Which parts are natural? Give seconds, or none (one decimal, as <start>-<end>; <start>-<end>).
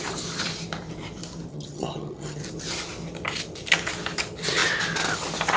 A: 0.0-1.5; 2.4-5.6